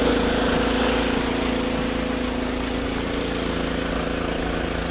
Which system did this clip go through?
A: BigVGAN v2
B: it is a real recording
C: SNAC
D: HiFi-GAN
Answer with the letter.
B